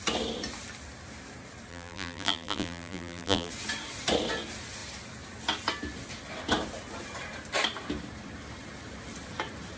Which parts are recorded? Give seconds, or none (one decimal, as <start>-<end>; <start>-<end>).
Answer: 0.0-1.7; 3.5-9.8